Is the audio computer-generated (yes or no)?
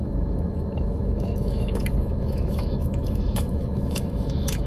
yes